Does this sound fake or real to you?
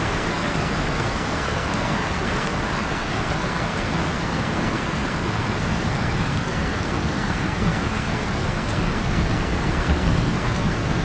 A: fake